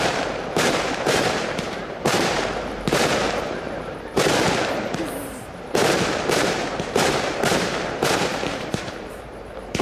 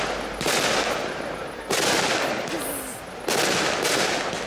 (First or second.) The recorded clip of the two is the second